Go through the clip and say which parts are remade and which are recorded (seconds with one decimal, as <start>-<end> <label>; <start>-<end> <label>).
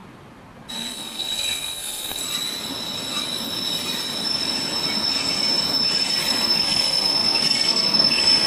0.0-0.7 recorded; 0.7-2.2 remade; 2.2-6.2 recorded; 6.2-8.5 remade